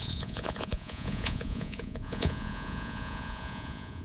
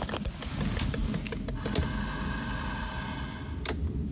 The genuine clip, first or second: second